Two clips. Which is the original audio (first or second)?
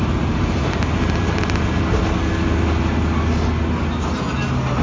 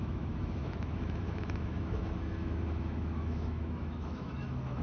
first